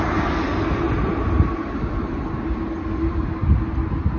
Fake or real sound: real